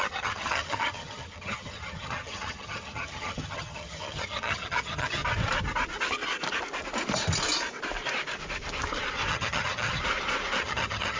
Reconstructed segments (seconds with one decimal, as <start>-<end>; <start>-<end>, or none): 0.0-5.2; 9.3-10.0; 10.6-11.2